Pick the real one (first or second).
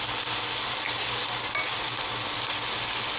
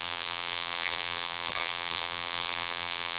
first